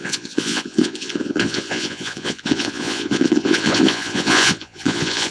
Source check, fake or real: fake